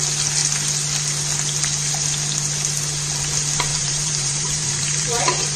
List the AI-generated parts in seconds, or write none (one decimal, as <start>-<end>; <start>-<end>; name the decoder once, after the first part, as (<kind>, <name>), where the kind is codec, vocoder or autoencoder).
3.7-5.6 (vocoder, BigVGAN v2)